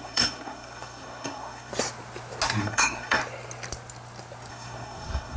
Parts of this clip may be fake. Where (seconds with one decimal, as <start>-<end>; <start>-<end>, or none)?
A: 0.0-1.7; 2.6-3.2; 4.5-5.4